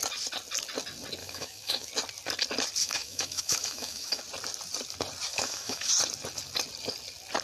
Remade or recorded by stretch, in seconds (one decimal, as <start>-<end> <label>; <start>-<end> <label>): 0.0-1.2 recorded; 1.2-1.9 remade; 1.9-2.8 recorded; 2.8-4.2 remade; 4.2-5.3 recorded; 5.3-5.9 remade; 5.9-7.4 recorded